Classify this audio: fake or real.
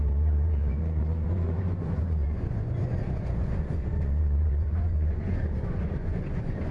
fake